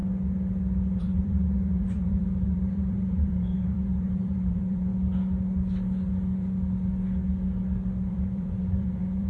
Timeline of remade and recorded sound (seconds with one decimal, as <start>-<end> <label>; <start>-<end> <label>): 0.0-1.0 recorded; 1.0-4.9 remade; 4.9-8.1 recorded; 8.1-9.3 remade